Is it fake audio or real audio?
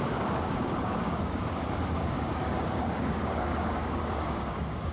fake